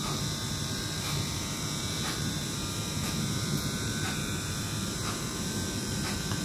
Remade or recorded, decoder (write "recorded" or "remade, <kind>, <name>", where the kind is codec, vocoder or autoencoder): remade, vocoder, BigVGAN v2